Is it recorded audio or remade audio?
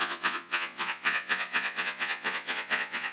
remade